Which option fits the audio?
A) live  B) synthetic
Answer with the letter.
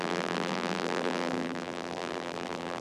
B